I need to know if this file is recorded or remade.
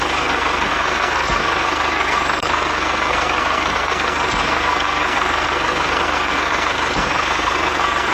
remade